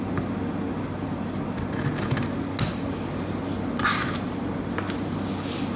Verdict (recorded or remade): recorded